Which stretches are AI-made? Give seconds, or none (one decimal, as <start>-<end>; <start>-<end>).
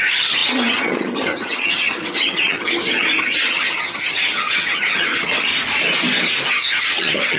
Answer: 0.0-5.5; 6.5-7.4